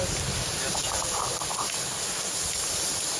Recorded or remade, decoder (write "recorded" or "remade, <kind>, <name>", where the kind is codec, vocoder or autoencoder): recorded